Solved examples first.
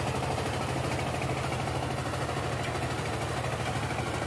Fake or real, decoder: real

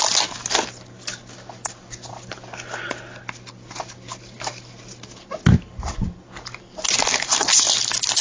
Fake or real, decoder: real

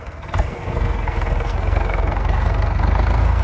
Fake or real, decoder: fake, codec, SNAC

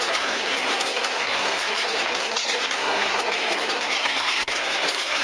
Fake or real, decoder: fake, codec, SNAC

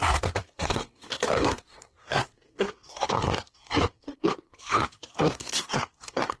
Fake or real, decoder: fake, codec, SNAC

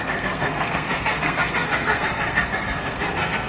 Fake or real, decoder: fake, codec, SNAC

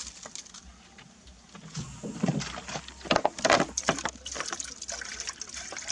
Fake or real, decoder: real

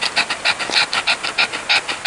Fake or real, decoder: real